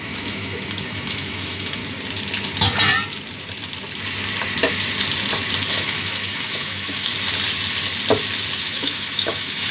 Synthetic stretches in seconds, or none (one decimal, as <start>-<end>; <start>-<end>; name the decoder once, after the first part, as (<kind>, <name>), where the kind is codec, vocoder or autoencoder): 0.0-1.8 (autoencoder, DAC-VAE); 5.7-7.1; 8.6-9.7